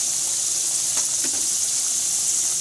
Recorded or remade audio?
recorded